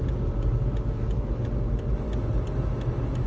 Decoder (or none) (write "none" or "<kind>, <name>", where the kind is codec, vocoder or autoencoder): none